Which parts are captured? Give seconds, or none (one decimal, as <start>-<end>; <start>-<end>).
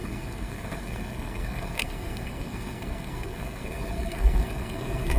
none